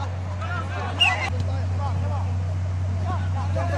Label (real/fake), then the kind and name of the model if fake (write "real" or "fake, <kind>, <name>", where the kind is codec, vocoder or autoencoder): real